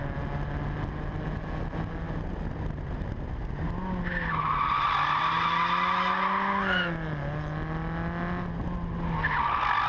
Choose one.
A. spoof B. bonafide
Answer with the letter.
B